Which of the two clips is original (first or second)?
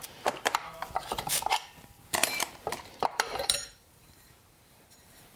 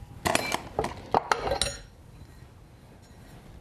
second